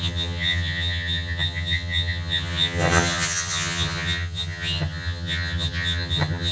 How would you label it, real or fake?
fake